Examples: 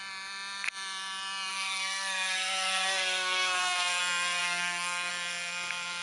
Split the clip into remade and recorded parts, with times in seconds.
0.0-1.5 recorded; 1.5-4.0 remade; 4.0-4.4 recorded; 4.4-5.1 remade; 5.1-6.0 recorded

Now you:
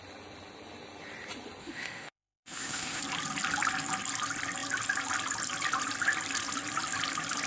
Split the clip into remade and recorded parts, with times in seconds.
0.0-1.6 recorded; 1.6-3.0 remade; 3.0-7.5 recorded